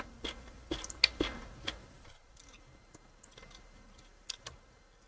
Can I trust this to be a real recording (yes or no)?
yes